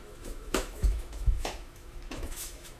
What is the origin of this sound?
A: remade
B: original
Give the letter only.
A